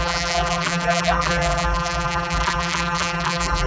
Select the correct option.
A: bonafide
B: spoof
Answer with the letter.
B